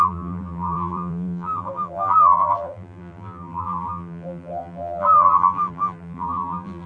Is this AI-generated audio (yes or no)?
yes